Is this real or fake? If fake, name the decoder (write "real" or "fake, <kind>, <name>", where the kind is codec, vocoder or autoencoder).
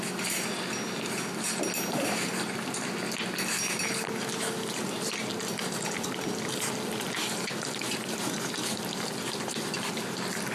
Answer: real